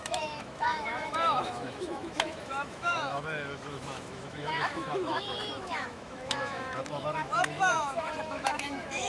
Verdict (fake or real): fake